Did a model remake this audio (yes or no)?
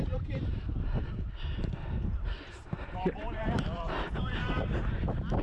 yes